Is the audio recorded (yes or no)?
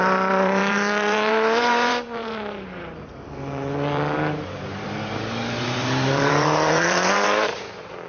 no